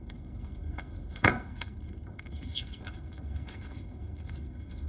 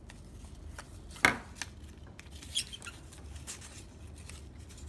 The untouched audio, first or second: second